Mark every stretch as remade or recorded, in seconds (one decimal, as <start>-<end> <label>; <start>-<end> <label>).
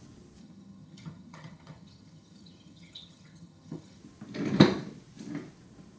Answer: 0.0-0.4 recorded; 0.4-4.0 remade; 4.0-6.0 recorded